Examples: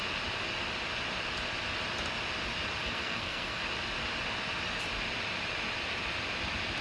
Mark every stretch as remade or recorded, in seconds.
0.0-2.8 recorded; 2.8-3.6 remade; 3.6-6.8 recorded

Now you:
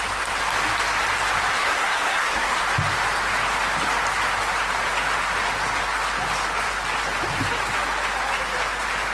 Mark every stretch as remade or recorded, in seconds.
0.0-1.5 recorded; 1.5-2.6 remade; 2.6-9.1 recorded